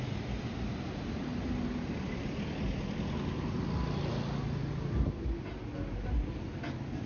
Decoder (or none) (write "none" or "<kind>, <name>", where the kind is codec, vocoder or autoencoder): none